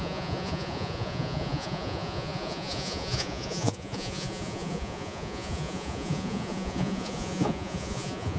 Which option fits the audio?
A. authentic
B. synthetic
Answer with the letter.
B